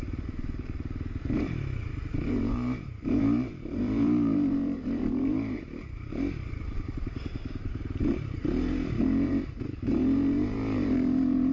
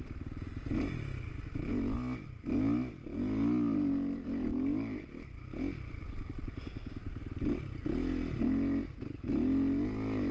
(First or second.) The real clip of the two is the second